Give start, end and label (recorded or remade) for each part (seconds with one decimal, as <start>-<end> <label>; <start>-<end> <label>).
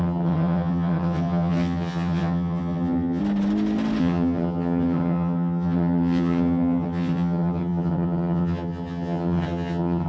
0.0-3.2 remade; 3.2-4.0 recorded; 4.0-10.1 remade